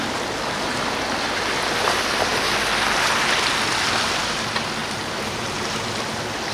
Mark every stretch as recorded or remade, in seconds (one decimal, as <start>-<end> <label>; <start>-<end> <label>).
0.0-4.8 recorded; 4.8-5.6 remade; 5.6-6.5 recorded

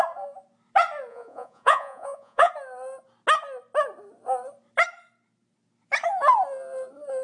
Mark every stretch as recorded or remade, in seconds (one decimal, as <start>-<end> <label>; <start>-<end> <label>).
0.0-1.1 recorded; 1.1-2.5 remade; 2.5-7.2 recorded

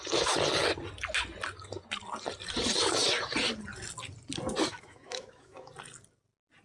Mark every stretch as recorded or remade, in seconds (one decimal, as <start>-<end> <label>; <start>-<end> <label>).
0.0-4.7 recorded; 4.7-5.7 remade; 5.7-6.6 recorded

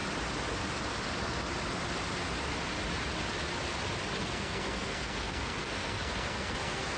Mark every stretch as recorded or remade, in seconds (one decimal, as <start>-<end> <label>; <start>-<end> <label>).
0.0-4.2 recorded; 4.2-7.0 remade

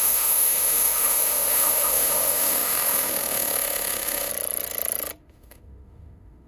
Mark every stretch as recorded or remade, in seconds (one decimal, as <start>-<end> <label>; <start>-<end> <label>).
0.0-4.3 remade; 4.3-5.2 recorded; 5.2-6.5 remade

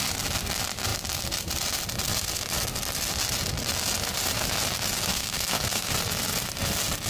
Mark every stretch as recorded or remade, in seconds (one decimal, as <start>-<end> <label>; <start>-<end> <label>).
0.0-5.1 recorded; 5.1-5.9 remade; 5.9-7.1 recorded

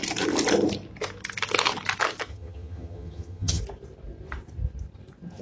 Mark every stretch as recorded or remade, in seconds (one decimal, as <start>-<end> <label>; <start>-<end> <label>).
0.0-2.3 recorded; 2.3-3.6 remade; 3.6-5.4 recorded